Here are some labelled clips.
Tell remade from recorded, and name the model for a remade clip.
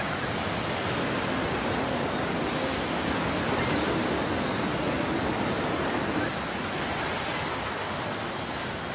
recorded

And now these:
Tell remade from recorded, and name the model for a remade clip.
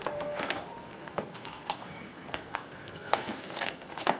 remade, codec, SNAC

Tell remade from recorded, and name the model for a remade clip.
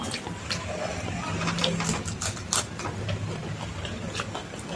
recorded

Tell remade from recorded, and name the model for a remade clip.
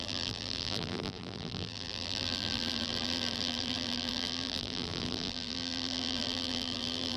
remade, vocoder, BigVGAN v2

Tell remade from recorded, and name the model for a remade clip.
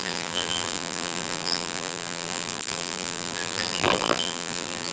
remade, vocoder, BigVGAN v2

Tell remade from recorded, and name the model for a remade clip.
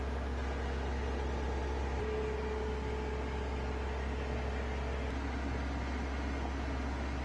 recorded